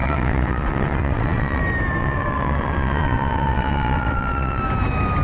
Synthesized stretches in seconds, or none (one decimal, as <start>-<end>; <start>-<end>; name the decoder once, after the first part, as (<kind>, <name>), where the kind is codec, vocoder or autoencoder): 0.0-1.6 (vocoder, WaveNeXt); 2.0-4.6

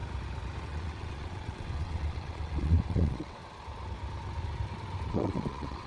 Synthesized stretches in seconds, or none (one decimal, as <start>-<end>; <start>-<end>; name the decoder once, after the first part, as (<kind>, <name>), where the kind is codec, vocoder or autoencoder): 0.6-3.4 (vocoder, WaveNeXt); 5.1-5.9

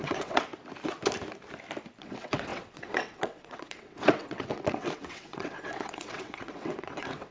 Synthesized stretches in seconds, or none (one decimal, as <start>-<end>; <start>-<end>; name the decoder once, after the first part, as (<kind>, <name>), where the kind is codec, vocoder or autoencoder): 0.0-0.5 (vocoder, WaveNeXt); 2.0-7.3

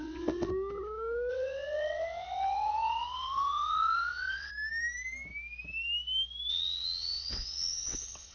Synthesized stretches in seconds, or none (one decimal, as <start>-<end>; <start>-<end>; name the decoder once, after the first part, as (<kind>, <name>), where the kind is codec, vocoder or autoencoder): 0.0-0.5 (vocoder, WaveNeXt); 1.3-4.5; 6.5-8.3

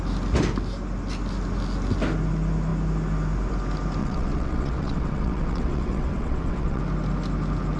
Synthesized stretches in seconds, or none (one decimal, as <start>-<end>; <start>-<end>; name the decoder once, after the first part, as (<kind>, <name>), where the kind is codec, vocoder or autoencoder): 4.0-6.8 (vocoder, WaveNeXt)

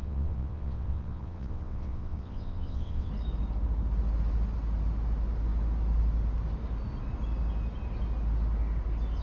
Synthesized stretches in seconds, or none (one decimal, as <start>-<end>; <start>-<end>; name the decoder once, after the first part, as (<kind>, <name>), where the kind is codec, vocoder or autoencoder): 0.0-3.1 (vocoder, WaveNeXt)

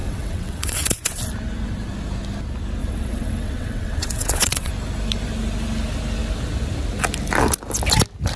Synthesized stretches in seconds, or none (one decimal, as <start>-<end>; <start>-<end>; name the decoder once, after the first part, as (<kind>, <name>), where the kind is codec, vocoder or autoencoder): 0.0-1.2 (vocoder, WaveNeXt); 2.8-4.7

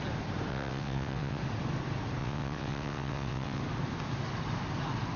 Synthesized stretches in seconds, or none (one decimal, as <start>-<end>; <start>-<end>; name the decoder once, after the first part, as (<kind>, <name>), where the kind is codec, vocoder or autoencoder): 0.5-1.4 (vocoder, WaveNeXt); 2.2-3.6